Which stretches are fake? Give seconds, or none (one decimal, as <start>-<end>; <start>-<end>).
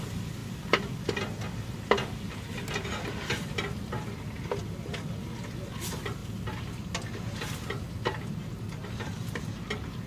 none